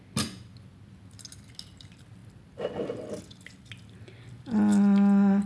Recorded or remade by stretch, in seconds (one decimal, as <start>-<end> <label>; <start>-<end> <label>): 0.0-5.5 recorded

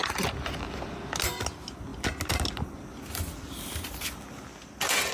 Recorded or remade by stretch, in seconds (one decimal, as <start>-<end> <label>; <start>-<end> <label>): 0.0-5.1 recorded

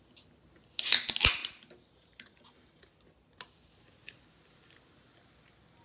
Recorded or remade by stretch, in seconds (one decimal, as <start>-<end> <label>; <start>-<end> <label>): 0.0-5.8 recorded

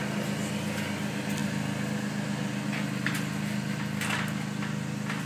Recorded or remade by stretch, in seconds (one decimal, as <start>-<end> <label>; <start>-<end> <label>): 0.0-5.3 recorded

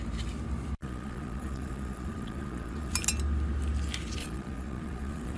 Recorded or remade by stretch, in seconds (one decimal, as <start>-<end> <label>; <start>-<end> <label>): 0.0-0.8 recorded; 0.8-2.9 remade; 2.9-4.2 recorded; 4.2-5.4 remade

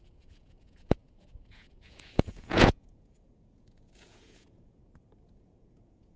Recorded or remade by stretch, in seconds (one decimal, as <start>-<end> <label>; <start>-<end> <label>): 0.0-6.2 remade